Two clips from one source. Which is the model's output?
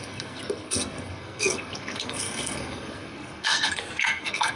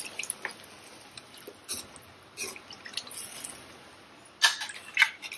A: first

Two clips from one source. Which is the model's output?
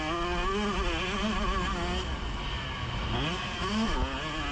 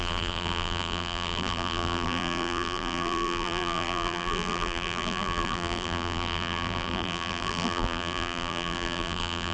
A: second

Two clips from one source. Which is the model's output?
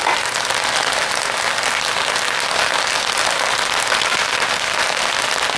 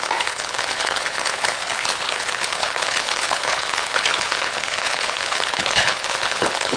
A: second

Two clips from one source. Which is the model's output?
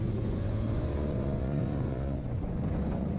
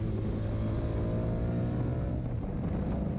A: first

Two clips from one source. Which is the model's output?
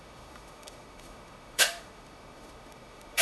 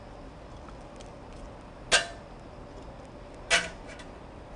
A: first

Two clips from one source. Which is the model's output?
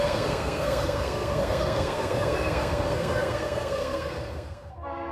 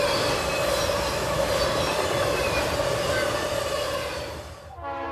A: first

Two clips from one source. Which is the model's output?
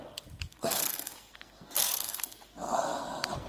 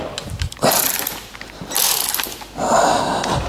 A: first